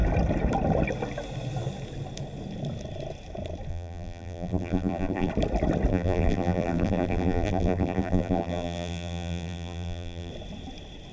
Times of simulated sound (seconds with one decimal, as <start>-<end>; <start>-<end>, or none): 3.7-5.3; 5.9-10.3